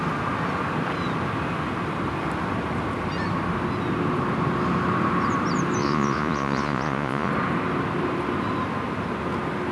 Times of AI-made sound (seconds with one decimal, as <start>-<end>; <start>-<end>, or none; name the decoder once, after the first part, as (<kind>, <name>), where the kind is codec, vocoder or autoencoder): 5.8-7.3 (vocoder, Vocos)